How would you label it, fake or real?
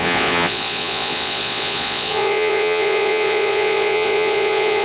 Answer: fake